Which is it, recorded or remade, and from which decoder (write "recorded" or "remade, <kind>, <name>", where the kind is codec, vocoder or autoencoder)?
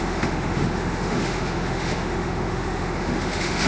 remade, autoencoder, DAC-VAE